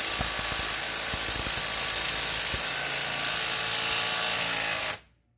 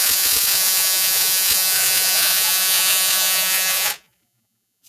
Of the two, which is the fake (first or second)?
second